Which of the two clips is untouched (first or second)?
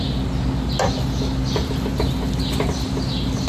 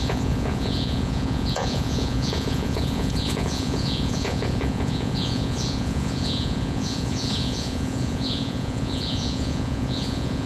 first